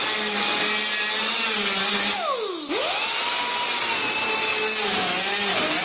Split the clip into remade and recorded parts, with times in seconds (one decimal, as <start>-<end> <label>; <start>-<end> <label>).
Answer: 0.0-5.8 recorded